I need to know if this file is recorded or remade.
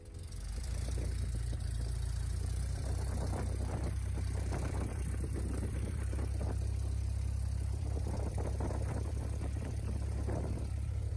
remade